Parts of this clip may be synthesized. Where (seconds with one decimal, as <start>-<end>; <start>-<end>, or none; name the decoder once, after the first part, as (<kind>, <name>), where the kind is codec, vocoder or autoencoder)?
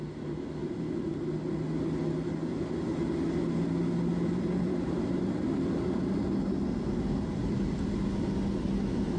0.6-1.2 (vocoder, BigVGAN v2); 4.1-6.2